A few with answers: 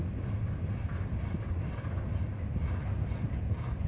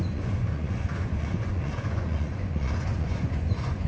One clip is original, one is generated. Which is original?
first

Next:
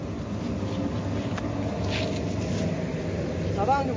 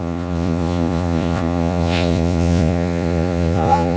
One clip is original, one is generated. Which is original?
first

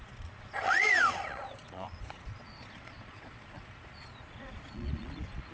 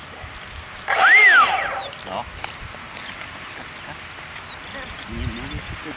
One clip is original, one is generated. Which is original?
second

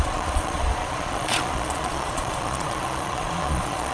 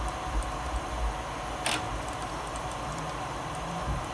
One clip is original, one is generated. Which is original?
second